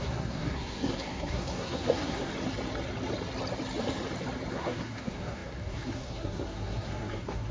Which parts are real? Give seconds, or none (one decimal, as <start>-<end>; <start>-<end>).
2.3-4.5